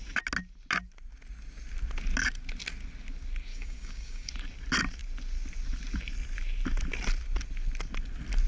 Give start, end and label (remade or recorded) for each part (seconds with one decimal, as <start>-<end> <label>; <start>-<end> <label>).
0.0-3.5 recorded; 3.5-4.3 remade; 4.3-8.5 recorded

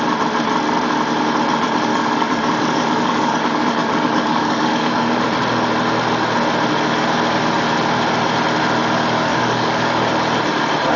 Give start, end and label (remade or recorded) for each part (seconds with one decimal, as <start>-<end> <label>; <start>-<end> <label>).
0.0-1.9 recorded; 1.9-5.2 remade; 5.2-9.3 recorded; 9.3-10.1 remade; 10.1-11.0 recorded

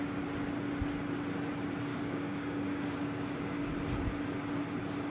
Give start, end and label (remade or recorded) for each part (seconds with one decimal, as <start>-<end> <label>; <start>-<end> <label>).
0.0-1.9 recorded; 1.9-3.7 remade; 3.7-5.1 recorded

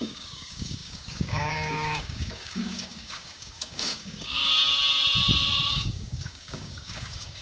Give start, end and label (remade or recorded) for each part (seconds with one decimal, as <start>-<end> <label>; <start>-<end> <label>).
0.0-4.4 remade; 4.4-5.7 recorded; 5.7-7.4 remade

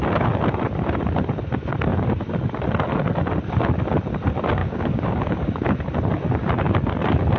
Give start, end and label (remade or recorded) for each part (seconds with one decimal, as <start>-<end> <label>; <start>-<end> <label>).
0.0-4.6 recorded; 4.6-5.8 remade; 5.8-7.4 recorded

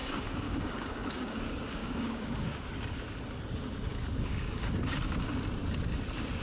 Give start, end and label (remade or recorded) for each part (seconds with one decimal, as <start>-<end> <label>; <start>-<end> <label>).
0.0-1.4 remade; 1.4-1.8 recorded; 1.8-2.7 remade; 2.7-3.9 recorded; 3.9-4.7 remade; 4.7-6.4 recorded

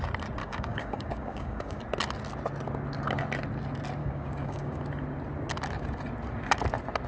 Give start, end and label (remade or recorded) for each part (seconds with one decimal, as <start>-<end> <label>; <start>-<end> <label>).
0.0-0.4 recorded; 0.4-1.8 remade; 1.8-4.0 recorded; 4.0-4.8 remade; 4.8-7.1 recorded

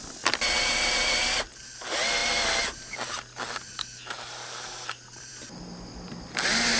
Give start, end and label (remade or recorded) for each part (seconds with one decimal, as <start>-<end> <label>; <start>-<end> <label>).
0.0-6.8 recorded